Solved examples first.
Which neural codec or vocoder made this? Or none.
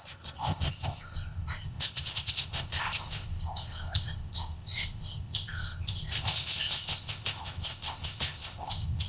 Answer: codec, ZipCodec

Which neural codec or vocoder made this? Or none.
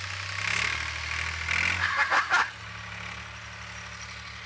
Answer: none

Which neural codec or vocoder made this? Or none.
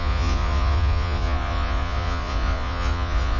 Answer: vocoder, Vocos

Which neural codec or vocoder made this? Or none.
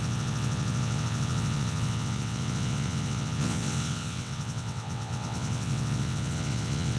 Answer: vocoder, WaveNeXt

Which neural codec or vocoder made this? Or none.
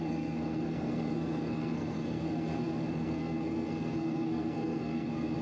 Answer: codec, SNAC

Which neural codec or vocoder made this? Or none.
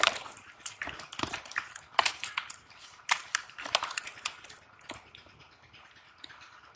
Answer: vocoder, BigVGAN v2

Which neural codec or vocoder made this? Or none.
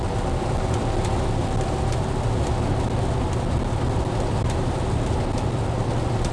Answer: none